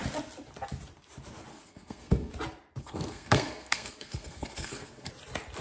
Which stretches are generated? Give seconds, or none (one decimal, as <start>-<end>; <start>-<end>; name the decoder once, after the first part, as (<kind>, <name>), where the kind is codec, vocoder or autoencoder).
1.5-2.3 (codec, SNAC); 2.8-5.1